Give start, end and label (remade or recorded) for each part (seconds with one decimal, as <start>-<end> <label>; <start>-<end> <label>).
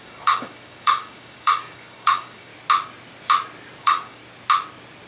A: 0.0-2.5 remade; 2.5-3.8 recorded; 3.8-4.2 remade; 4.2-5.1 recorded